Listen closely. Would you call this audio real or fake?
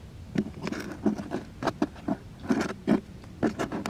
real